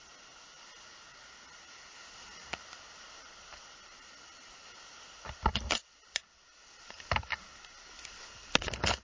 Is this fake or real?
real